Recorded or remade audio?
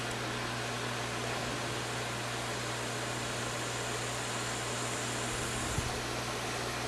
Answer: recorded